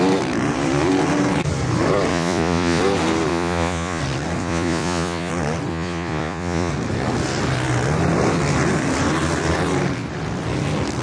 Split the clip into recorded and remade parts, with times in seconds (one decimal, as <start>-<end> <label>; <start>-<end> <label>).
0.0-2.1 recorded; 2.1-2.8 remade; 2.8-3.3 recorded; 3.3-4.0 remade; 4.0-4.4 recorded; 4.4-5.3 remade; 5.3-5.7 recorded; 5.7-6.7 remade; 6.7-11.0 recorded